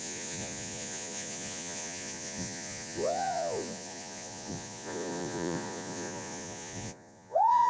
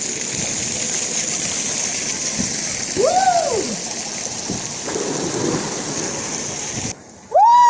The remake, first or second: first